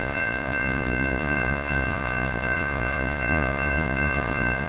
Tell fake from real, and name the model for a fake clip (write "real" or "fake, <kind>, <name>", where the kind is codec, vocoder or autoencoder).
fake, vocoder, Vocos